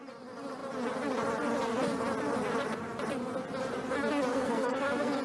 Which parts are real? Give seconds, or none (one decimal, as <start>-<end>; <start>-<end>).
0.0-4.3